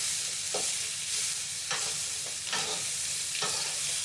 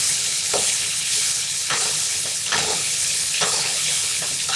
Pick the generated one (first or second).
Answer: second